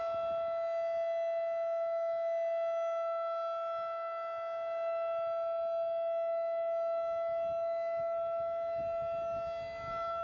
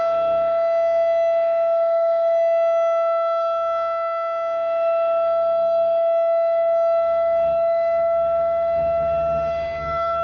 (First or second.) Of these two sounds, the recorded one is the first